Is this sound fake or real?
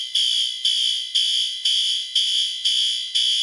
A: real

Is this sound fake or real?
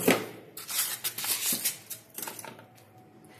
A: real